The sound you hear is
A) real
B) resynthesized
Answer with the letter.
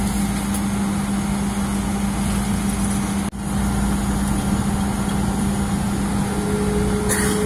A